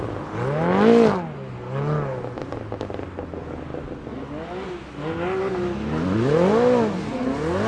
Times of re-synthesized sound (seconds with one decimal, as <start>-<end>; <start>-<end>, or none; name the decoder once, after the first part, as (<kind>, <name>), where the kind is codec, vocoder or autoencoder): none